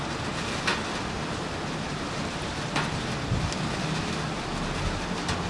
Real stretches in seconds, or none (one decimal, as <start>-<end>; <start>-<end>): 0.0-5.5